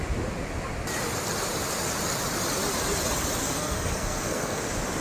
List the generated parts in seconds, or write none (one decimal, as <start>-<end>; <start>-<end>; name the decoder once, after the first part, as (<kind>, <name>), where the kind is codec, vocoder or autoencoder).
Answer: 3.4-4.6 (codec, SNAC)